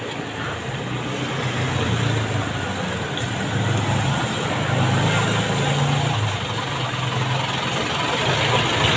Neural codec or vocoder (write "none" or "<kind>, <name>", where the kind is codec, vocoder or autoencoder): none